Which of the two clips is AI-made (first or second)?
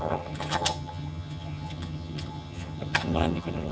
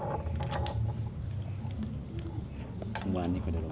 first